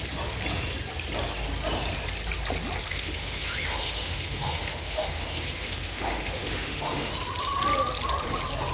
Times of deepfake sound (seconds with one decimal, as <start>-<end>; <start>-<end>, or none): 2.9-7.1